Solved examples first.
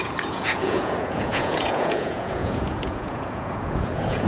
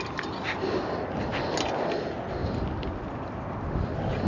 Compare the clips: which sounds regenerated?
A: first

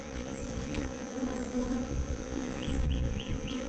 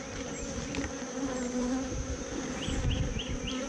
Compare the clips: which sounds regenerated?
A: first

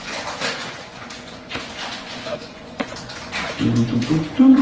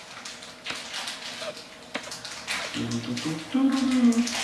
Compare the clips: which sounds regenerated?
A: first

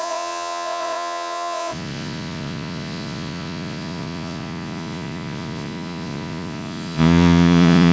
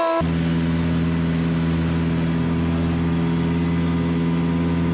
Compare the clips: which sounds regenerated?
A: first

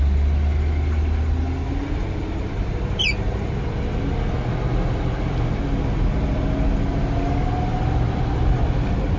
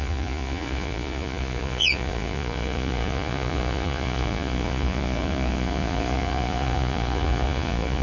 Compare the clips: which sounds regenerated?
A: second